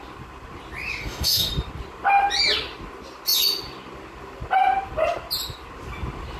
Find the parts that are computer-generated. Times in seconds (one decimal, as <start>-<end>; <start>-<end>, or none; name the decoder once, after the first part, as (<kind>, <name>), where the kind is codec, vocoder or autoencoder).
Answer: 1.0-1.5 (codec, DAC)